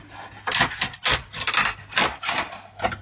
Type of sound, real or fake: real